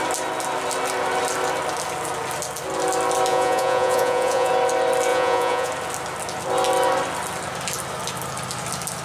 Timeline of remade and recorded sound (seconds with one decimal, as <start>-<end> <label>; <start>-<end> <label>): 0.0-3.3 recorded; 3.3-4.5 remade; 4.5-5.1 recorded; 5.1-5.7 remade; 5.7-9.0 recorded